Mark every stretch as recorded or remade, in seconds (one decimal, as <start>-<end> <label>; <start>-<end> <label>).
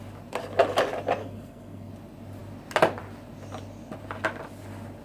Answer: 0.0-1.2 recorded; 1.2-1.9 remade; 1.9-5.0 recorded